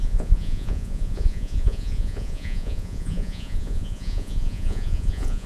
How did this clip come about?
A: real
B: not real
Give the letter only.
B